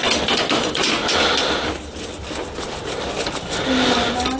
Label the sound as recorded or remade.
recorded